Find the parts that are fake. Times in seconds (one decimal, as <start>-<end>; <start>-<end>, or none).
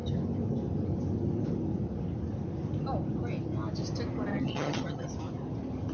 4.3-5.1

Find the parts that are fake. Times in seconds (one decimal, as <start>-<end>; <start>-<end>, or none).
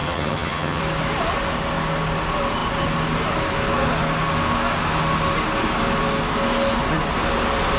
0.0-0.8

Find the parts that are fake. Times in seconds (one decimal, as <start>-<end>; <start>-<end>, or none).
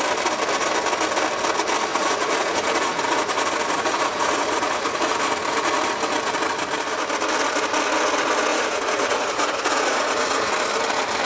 1.9-5.2; 8.5-10.5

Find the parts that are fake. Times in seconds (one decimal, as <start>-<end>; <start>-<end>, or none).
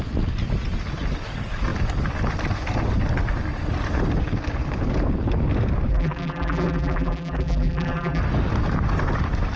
5.9-8.2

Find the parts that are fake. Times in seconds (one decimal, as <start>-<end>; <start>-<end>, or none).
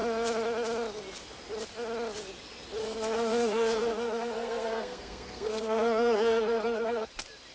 2.8-7.1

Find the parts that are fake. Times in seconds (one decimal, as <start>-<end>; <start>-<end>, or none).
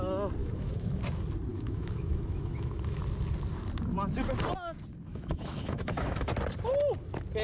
0.4-1.0; 1.5-3.0; 5.1-6.3